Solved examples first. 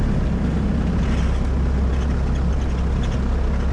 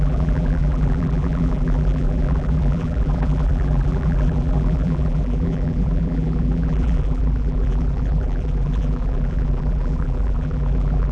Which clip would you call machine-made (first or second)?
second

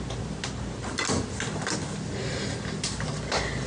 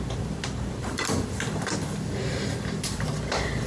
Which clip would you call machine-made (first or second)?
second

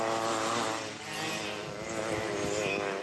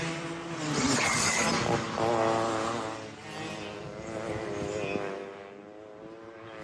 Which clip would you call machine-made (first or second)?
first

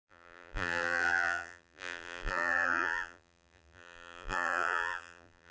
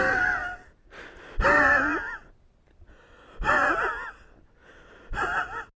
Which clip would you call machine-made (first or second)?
first